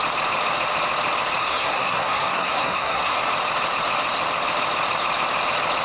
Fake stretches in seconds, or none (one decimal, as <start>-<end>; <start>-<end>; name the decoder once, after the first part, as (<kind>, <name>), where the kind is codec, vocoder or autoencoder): 1.4-3.2 (codec, SNAC)